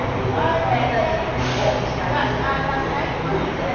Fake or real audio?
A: real